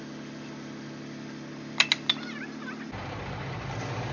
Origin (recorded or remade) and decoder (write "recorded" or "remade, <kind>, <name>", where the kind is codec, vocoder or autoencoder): recorded